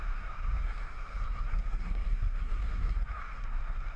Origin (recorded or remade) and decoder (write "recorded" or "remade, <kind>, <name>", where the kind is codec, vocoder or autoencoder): remade, codec, SNAC